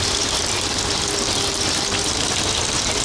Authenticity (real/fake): real